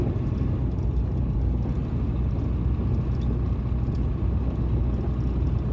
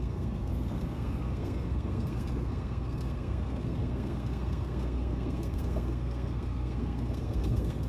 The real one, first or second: first